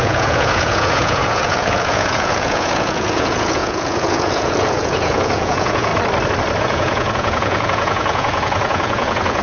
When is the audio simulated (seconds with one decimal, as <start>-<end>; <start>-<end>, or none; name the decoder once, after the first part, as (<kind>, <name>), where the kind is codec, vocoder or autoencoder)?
0.0-5.9 (vocoder, Vocos); 6.6-9.4